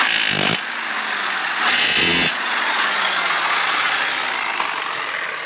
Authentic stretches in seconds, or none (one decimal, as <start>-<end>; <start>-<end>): 0.0-1.4; 4.0-5.5